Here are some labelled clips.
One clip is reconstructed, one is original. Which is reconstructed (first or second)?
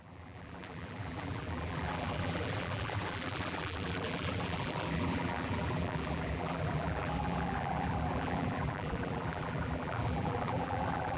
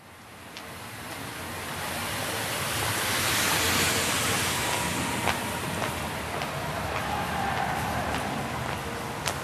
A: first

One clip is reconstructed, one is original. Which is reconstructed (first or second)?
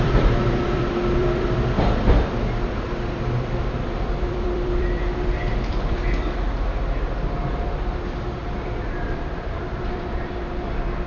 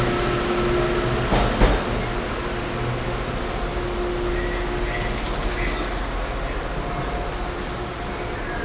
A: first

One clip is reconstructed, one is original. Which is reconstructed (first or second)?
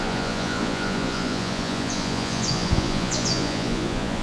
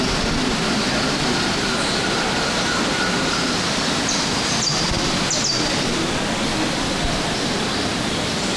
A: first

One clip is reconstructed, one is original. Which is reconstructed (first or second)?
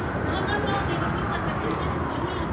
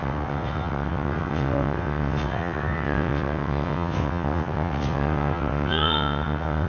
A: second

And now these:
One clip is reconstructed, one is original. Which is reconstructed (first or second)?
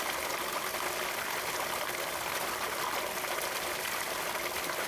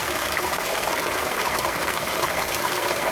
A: second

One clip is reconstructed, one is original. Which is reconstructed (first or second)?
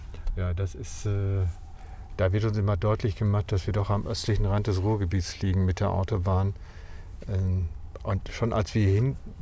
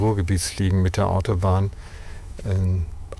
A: second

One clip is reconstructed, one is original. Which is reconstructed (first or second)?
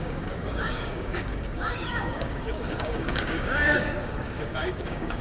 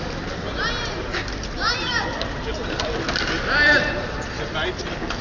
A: first